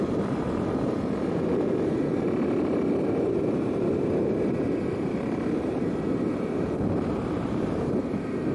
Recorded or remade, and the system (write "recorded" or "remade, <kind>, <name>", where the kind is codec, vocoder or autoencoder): remade, vocoder, BigVGAN v2